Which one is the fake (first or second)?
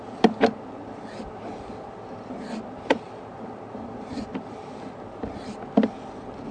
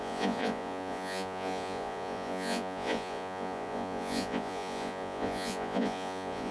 second